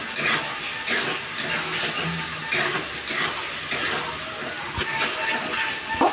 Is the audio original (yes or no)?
yes